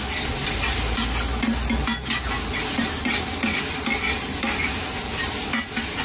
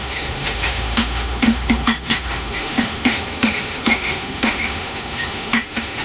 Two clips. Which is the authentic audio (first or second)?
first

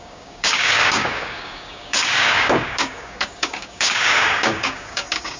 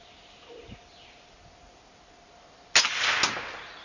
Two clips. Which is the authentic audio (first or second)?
second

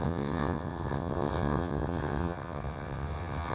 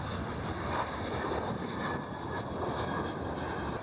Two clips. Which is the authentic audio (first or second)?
second